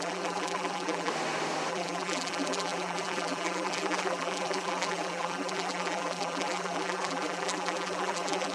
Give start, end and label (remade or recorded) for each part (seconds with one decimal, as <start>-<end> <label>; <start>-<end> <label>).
0.0-1.1 remade; 1.1-1.7 recorded; 1.7-8.5 remade